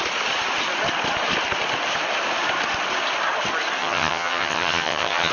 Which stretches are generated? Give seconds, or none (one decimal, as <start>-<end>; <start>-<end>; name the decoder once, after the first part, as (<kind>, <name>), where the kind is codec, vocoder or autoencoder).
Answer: 3.8-5.3 (vocoder, HiFi-GAN)

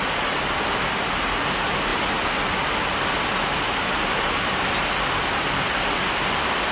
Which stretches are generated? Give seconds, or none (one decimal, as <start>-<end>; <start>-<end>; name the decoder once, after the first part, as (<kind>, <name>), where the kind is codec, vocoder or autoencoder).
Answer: none

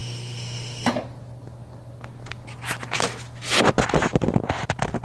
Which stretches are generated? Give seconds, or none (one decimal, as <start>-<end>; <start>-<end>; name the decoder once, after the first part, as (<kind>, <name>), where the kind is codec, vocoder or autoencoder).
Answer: 0.0-0.9 (autoencoder, DAC-VAE)

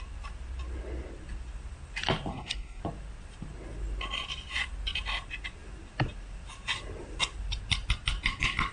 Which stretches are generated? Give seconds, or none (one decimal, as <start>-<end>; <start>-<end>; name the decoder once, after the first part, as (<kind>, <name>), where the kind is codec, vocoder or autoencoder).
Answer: 2.3-2.8 (codec, SNAC)

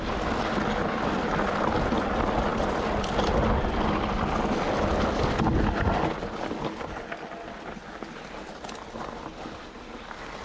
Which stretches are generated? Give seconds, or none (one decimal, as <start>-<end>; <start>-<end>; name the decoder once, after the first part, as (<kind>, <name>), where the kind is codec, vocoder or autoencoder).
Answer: none

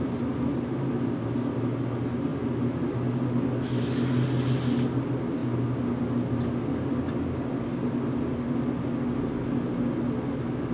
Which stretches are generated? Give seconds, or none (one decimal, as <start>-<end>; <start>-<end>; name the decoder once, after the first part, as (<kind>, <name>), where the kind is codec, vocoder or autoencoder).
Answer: none